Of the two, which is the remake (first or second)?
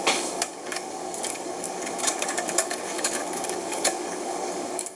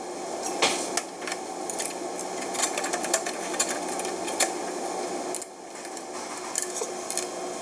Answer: first